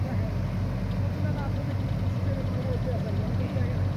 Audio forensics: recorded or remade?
recorded